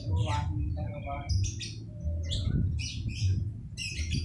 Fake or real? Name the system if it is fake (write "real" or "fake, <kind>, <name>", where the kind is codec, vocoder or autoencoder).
real